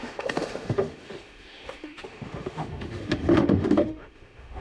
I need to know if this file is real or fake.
fake